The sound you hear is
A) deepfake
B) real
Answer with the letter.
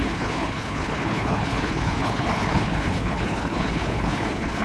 A